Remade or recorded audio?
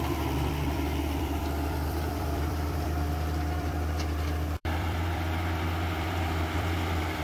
remade